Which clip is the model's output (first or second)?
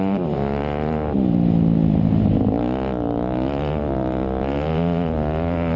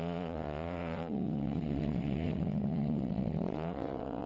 second